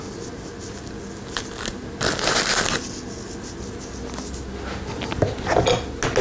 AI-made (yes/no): no